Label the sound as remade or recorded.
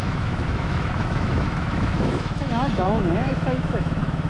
remade